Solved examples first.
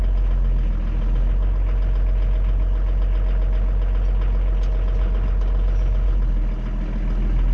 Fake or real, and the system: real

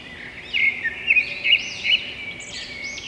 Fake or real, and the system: real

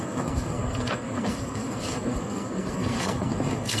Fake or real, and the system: fake, codec, SNAC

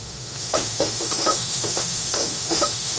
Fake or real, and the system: fake, autoencoder, DAC-VAE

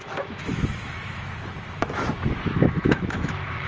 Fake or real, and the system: fake, autoencoder, DAC-VAE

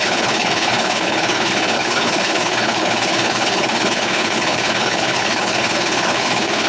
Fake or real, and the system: fake, codec, HILCodec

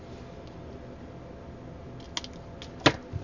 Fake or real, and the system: real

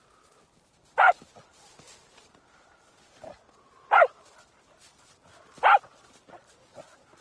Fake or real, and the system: real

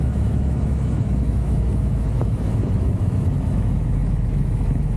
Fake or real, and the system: fake, autoencoder, DAC-VAE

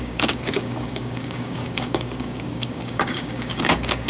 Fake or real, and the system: fake, codec, DAC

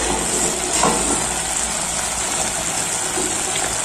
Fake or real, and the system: real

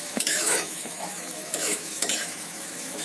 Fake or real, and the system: fake, autoencoder, DAC-VAE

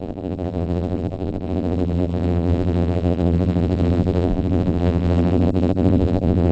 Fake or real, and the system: fake, vocoder, BigVGAN v2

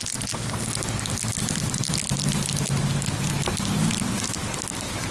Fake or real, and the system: real